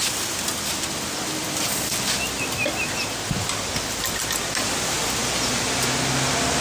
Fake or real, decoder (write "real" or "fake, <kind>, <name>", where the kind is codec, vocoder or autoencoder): real